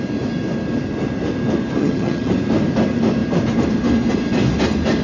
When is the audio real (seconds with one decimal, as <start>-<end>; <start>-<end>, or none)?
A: 0.0-1.8; 2.3-5.0